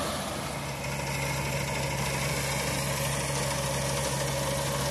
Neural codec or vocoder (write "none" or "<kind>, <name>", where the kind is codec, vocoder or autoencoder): none